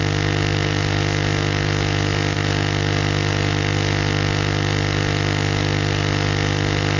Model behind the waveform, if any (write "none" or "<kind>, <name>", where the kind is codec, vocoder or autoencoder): none